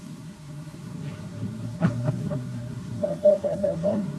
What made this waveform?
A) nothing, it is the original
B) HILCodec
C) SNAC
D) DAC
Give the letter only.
C